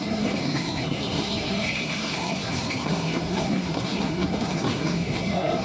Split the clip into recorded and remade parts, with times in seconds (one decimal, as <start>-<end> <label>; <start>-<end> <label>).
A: 0.0-5.6 remade